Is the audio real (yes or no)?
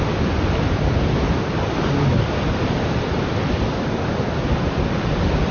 yes